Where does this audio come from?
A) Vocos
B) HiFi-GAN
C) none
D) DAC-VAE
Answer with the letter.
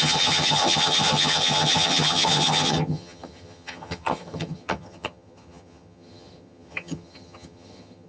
B